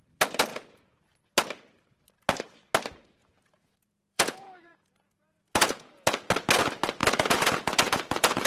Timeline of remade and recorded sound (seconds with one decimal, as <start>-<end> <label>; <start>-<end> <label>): 0.0-0.5 recorded; 0.5-1.0 remade; 1.0-3.2 recorded; 3.2-6.3 remade; 6.3-7.0 recorded; 7.0-8.5 remade